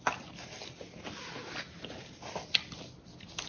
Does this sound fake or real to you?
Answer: real